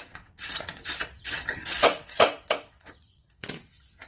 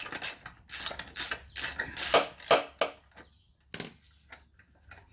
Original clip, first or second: second